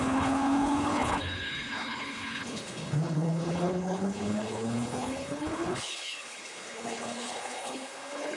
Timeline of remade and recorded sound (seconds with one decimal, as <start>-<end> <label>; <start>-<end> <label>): 0.0-8.4 remade